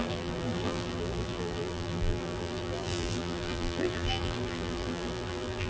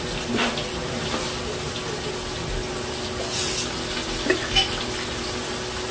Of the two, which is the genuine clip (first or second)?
second